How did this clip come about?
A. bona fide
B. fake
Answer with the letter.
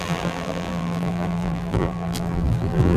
B